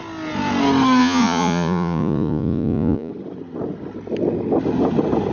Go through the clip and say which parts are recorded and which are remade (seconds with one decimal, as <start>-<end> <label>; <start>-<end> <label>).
0.0-1.0 recorded; 1.0-3.1 remade; 3.1-5.3 recorded